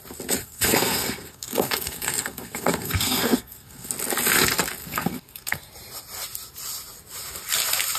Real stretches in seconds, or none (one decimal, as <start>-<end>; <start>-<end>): 0.0-0.4; 3.9-4.8; 5.7-8.0